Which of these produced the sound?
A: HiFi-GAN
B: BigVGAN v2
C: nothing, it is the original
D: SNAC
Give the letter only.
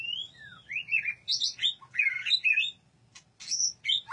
C